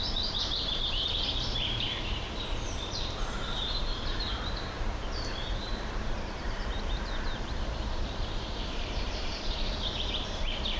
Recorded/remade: remade